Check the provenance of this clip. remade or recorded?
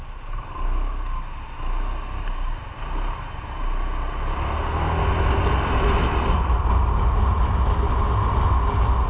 recorded